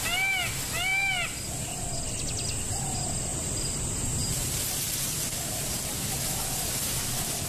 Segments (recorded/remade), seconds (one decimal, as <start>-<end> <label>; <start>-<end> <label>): 0.0-3.3 recorded; 3.3-6.3 remade; 6.3-7.5 recorded

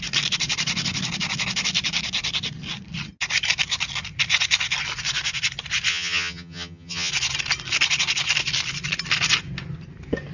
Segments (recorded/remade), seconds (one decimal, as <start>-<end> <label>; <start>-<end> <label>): 0.0-5.9 recorded; 5.9-7.1 remade; 7.1-10.3 recorded

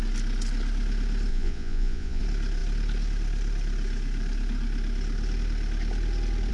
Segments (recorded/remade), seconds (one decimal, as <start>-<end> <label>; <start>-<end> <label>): 0.0-1.3 recorded; 1.3-2.2 remade; 2.2-6.5 recorded

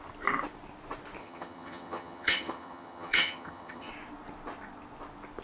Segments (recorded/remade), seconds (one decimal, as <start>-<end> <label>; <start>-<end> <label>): 0.0-1.2 recorded; 1.2-3.9 remade; 3.9-5.4 recorded

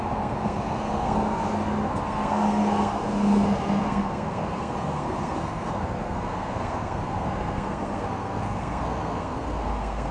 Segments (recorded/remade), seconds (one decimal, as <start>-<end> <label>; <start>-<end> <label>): 0.0-10.1 remade

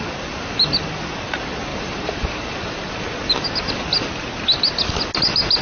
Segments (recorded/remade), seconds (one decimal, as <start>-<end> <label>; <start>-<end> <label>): 0.0-1.7 recorded; 1.7-2.9 remade; 2.9-5.6 recorded

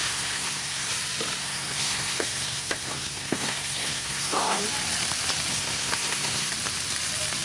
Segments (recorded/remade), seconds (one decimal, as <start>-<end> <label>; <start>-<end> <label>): 0.0-0.9 remade; 0.9-1.4 recorded; 1.4-4.6 remade; 4.6-5.5 recorded; 5.5-6.5 remade; 6.5-7.4 recorded